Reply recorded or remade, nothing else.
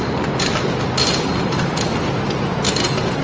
recorded